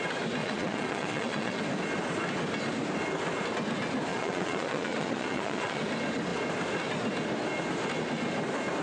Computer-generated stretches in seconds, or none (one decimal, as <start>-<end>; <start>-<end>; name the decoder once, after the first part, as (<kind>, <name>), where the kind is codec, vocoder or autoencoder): 0.4-1.6 (vocoder, Vocos); 4.1-5.8